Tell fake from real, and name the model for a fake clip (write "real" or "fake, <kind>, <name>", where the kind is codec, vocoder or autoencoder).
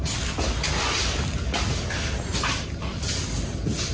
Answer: real